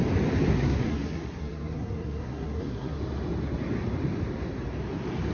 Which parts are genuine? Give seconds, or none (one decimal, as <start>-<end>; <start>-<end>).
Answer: 0.0-0.5; 3.0-5.3